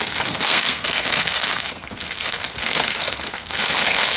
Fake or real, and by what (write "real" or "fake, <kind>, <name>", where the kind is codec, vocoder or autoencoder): fake, codec, SNAC